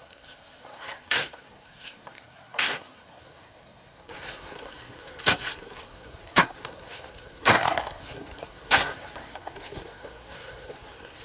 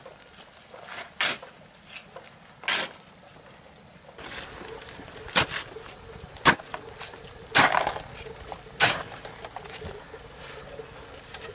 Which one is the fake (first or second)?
first